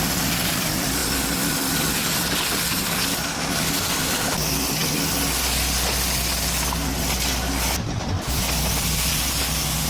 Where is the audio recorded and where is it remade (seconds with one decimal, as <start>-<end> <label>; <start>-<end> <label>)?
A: 0.0-9.9 recorded